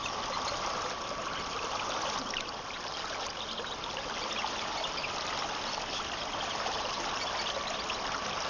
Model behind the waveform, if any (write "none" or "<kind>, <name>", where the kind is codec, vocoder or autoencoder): none